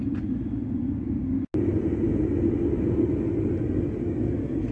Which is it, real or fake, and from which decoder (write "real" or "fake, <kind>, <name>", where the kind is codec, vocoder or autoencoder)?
real